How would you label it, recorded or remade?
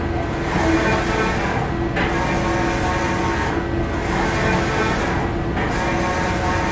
recorded